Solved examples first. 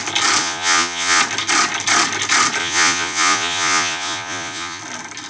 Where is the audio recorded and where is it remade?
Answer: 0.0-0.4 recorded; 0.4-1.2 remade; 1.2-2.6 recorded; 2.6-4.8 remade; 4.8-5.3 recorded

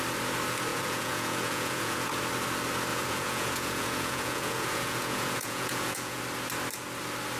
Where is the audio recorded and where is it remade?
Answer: 0.0-0.7 recorded; 0.7-2.2 remade; 2.2-2.9 recorded; 2.9-6.2 remade; 6.2-7.4 recorded

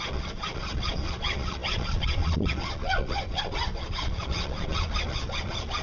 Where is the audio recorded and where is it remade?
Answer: 0.0-5.8 remade